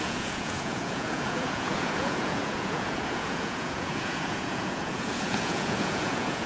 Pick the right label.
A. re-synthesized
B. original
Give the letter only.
A